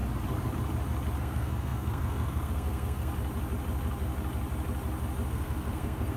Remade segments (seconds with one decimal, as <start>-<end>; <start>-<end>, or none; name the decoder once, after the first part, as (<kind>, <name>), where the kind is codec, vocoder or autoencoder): 1.2-3.1 (codec, SNAC); 5.3-6.2